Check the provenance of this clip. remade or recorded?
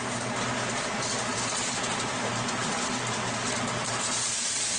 remade